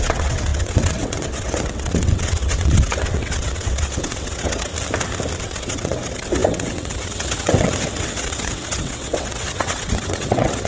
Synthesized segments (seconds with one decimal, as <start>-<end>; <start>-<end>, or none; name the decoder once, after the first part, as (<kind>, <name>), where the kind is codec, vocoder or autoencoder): 0.0-4.7 (vocoder, WaveNeXt); 5.4-10.7